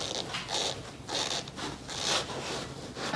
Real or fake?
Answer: real